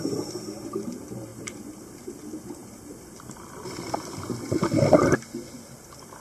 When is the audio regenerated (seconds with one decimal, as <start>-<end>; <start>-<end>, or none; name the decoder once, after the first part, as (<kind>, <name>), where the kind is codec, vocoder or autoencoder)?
1.3-2.2 (vocoder, BigVGAN v2); 2.6-6.2